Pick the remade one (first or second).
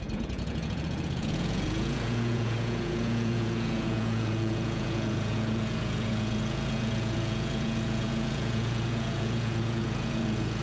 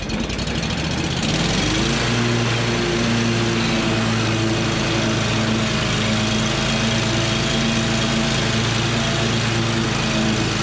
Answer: first